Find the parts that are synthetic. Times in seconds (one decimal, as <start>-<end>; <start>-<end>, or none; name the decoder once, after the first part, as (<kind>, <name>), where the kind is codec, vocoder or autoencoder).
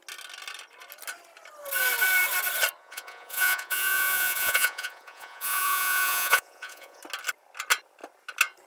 2.8-7.0 (vocoder, Vocos)